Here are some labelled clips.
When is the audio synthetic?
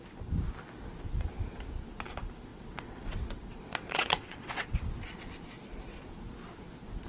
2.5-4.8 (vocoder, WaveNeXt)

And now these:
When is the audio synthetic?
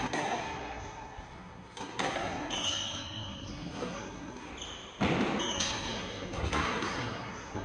0.0-4.5 (codec, SNAC); 5.4-7.6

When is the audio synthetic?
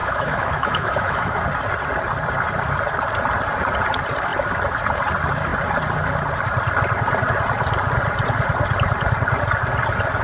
0.0-1.4 (autoencoder, DAC-VAE)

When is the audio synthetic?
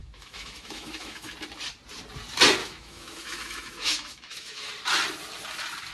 0.0-1.3 (autoencoder, DAC-VAE); 2.6-4.7